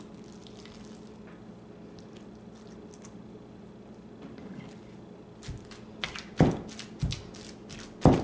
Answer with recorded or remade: recorded